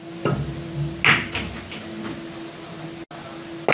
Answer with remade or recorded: recorded